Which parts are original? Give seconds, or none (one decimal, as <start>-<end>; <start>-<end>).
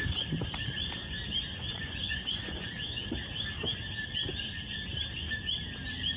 0.0-1.3; 3.1-6.2